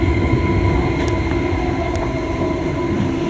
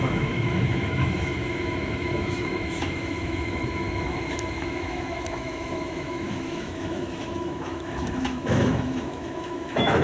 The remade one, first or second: second